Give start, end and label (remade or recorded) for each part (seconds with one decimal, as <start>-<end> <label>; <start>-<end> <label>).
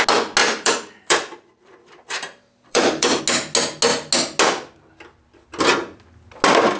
0.0-0.4 recorded; 0.4-3.2 remade; 3.2-6.8 recorded